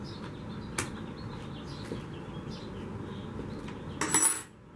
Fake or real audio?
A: real